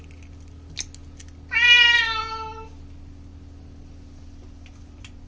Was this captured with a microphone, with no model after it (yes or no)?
yes